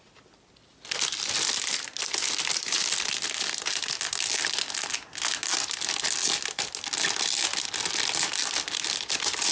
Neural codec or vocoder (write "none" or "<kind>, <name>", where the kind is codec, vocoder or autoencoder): none